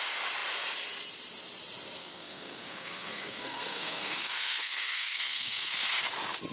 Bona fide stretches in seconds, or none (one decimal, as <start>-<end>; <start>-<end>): 0.0-2.0; 5.9-6.5